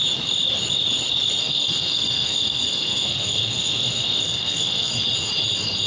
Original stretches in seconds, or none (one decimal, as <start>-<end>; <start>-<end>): 0.0-1.4; 4.9-5.9